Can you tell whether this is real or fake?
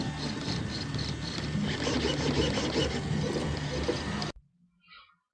real